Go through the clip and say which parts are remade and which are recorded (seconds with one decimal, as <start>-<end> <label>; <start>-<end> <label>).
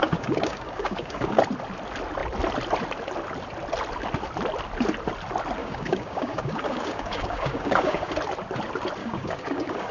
0.0-1.4 remade; 1.4-5.6 recorded; 5.6-8.1 remade; 8.1-9.0 recorded; 9.0-9.9 remade